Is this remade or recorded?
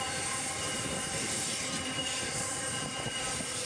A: recorded